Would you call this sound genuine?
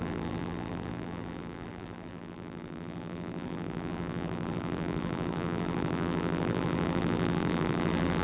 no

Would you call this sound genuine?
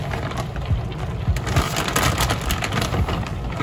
yes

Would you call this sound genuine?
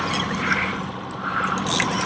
yes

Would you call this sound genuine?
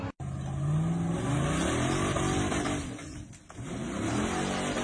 yes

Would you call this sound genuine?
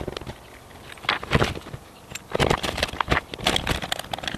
no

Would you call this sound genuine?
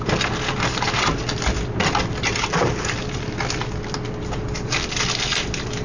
yes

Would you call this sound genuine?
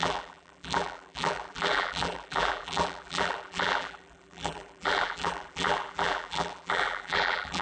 no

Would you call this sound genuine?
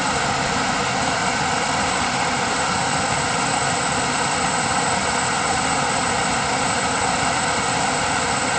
no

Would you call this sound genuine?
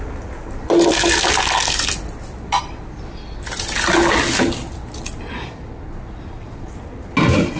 yes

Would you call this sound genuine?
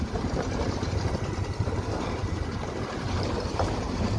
no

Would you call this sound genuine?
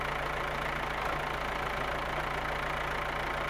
yes